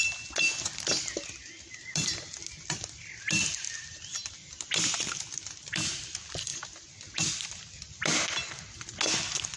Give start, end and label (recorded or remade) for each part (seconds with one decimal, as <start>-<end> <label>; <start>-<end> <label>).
0.0-9.6 recorded